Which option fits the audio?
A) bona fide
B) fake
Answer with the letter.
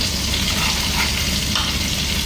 A